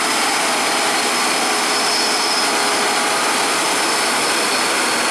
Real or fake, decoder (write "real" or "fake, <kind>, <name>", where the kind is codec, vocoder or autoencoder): real